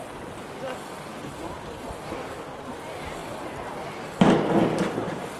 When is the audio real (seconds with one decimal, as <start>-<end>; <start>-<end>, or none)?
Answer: 0.0-5.4